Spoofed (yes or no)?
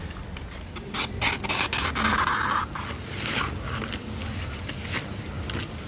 no